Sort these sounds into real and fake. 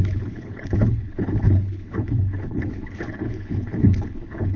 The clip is fake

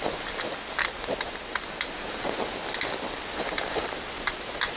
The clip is real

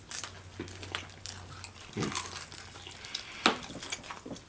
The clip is real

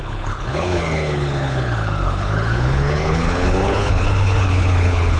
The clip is fake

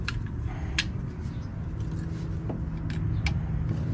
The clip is real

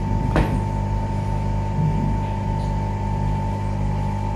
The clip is real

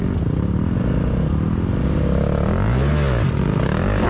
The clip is real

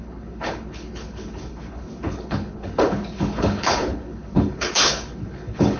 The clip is fake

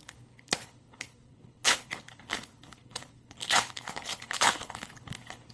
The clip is fake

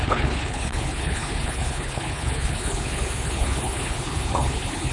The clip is fake